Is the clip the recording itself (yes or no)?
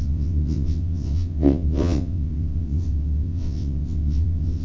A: no